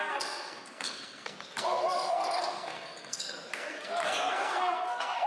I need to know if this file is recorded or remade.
remade